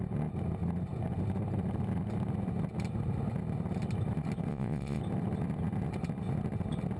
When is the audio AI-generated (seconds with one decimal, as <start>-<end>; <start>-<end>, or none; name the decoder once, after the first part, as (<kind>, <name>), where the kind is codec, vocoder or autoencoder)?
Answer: 4.5-5.0 (vocoder, Vocos)